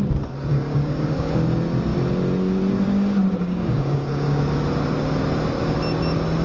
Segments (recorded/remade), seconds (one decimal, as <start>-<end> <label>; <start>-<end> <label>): 0.0-0.5 recorded; 0.5-1.3 remade; 1.3-3.4 recorded; 3.4-4.4 remade; 4.4-6.4 recorded